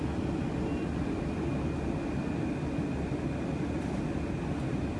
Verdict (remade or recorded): recorded